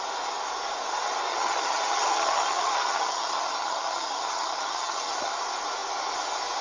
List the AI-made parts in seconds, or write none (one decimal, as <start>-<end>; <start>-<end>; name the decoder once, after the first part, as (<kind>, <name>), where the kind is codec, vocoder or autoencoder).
1.3-5.3 (vocoder, HiFi-GAN)